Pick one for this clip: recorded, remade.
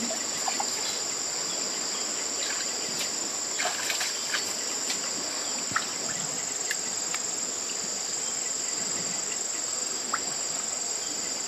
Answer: recorded